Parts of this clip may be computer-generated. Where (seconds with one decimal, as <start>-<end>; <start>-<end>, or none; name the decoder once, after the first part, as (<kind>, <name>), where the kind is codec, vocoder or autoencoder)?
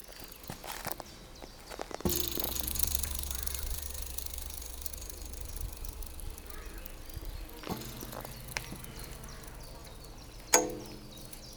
2.1-6.0 (vocoder, BigVGAN v2)